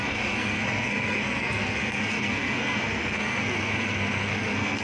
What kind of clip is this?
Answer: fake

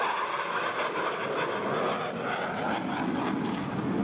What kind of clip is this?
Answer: real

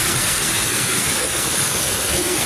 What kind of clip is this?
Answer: fake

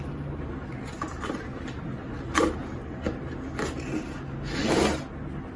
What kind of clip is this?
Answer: real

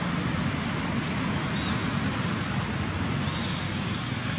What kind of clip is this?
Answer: real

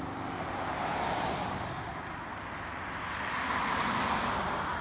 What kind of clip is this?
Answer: real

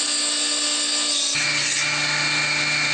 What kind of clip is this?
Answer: real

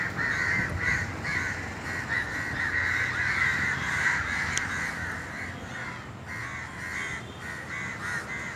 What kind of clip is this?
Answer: real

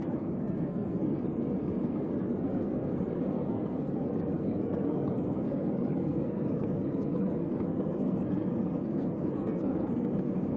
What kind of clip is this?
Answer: fake